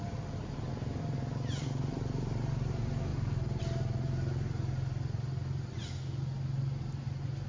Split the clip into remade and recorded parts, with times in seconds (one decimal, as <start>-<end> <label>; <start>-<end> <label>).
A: 0.0-3.1 recorded; 3.1-3.6 remade; 3.6-7.5 recorded